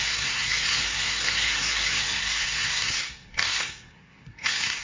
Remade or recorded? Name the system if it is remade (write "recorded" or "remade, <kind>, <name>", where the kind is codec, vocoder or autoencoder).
remade, codec, SNAC